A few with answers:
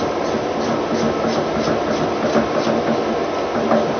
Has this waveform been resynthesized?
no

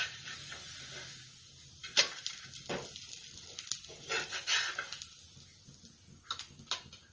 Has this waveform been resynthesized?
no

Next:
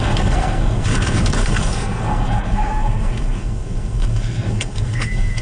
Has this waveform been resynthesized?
yes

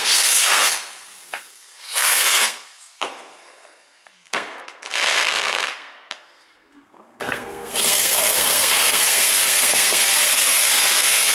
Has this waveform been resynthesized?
yes